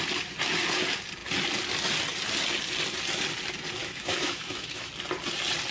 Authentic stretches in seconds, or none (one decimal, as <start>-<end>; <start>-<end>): 0.0-3.8; 4.9-5.7